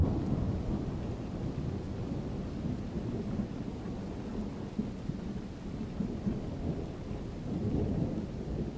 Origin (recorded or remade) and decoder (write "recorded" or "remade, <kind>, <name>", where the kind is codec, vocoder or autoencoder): recorded